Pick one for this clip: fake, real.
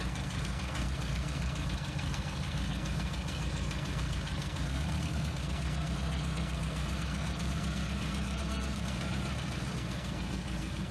fake